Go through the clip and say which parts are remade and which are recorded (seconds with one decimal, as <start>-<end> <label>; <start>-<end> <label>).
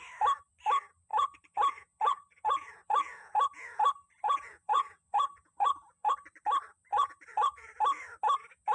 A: 0.0-1.1 recorded; 1.1-6.1 remade; 6.1-6.9 recorded; 6.9-7.8 remade; 7.8-8.7 recorded